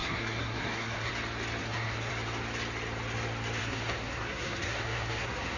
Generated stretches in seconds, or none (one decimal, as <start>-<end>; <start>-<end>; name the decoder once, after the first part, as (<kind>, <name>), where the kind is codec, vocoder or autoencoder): 0.0-1.1 (codec, SNAC); 1.6-2.1; 3.6-5.6